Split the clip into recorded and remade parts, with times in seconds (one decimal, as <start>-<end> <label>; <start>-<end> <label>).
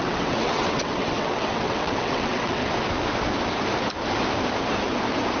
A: 0.0-2.6 remade; 2.6-5.4 recorded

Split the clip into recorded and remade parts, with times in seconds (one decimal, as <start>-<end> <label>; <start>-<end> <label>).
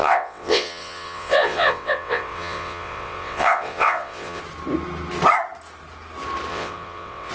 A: 0.0-4.4 remade; 4.4-6.5 recorded; 6.5-7.3 remade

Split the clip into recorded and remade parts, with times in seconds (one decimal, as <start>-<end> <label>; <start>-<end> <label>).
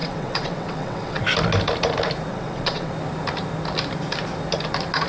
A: 0.0-1.2 remade; 1.2-2.3 recorded; 2.3-2.9 remade; 2.9-5.1 recorded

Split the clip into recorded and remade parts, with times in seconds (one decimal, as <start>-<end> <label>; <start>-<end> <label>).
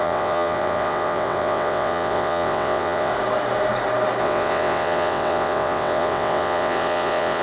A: 0.0-3.1 remade; 3.1-4.2 recorded; 4.2-7.4 remade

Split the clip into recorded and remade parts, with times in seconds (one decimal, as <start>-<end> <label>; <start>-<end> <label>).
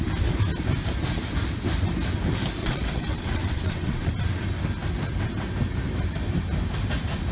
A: 0.0-2.6 recorded; 2.6-4.1 remade; 4.1-7.3 recorded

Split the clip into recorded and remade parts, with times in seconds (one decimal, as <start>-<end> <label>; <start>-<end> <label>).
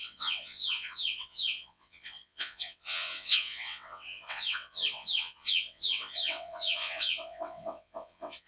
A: 0.0-8.5 remade